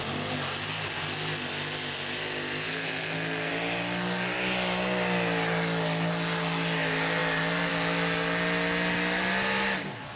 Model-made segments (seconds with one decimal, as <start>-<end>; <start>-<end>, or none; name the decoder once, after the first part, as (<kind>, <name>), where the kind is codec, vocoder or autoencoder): 2.7-3.5 (codec, SNAC)

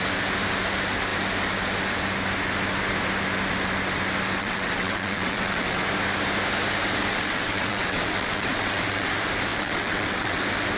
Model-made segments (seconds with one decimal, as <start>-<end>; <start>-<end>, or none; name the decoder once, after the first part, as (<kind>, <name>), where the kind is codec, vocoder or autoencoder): 4.4-5.8 (vocoder, WaveNeXt); 7.1-9.1; 9.5-10.4

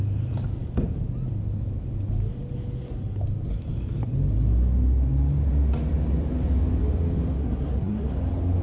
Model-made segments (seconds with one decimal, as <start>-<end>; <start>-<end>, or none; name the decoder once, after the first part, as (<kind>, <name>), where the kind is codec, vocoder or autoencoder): 7.4-8.1 (codec, SNAC)

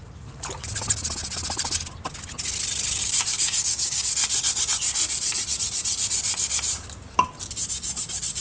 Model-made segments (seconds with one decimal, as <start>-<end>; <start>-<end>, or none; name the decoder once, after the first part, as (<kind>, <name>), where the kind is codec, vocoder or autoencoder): 3.0-4.1 (codec, DAC)

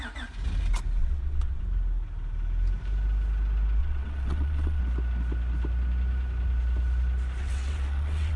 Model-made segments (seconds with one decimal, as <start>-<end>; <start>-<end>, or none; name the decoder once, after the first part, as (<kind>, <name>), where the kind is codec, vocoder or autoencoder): 1.0-1.6 (vocoder, WaveNeXt); 3.8-4.8; 7.4-8.4

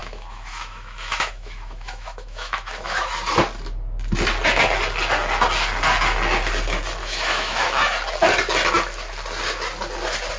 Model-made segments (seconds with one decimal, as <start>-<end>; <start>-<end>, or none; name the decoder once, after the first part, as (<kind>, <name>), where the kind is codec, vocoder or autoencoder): 0.0-3.1 (autoencoder, DAC-VAE); 7.0-7.8

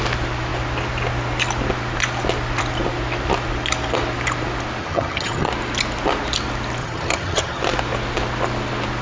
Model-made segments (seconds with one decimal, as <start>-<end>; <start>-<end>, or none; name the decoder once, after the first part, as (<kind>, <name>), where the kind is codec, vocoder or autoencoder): 4.8-5.5 (vocoder, HiFi-GAN); 6.8-7.6